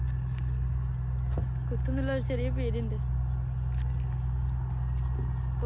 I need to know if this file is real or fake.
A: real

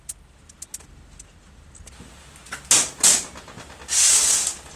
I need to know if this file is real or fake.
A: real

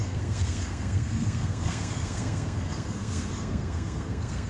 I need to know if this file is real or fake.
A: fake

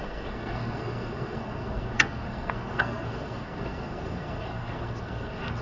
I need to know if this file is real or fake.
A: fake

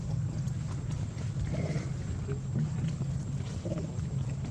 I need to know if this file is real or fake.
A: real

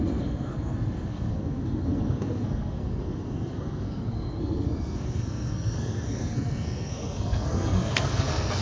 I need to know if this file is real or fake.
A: fake